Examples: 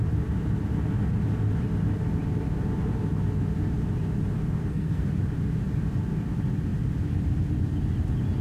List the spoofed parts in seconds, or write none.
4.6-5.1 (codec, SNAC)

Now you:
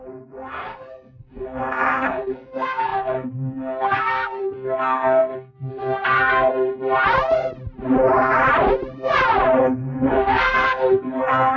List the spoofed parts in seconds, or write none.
0.0-6.5 (codec, SNAC); 9.6-11.6